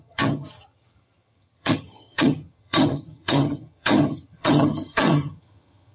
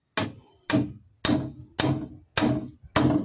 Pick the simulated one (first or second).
first